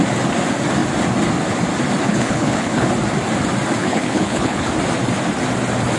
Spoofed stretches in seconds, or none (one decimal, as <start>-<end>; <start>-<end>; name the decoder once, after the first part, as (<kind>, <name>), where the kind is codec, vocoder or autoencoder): 2.1-2.9 (codec, HILCodec); 3.8-4.7